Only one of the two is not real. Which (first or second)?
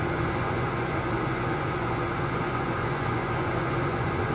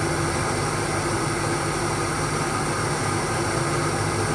first